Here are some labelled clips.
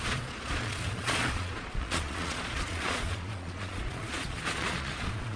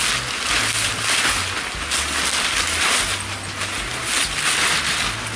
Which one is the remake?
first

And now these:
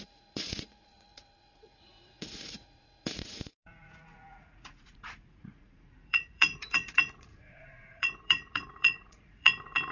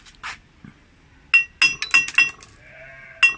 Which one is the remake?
first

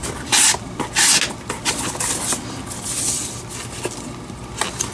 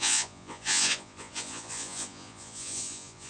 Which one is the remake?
second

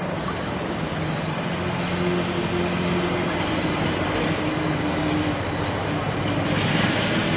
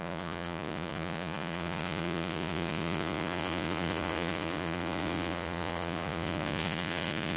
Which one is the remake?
second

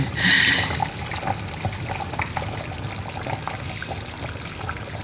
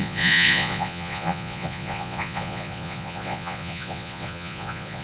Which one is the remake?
second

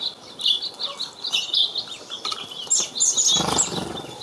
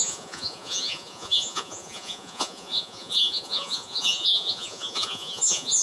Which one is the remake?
second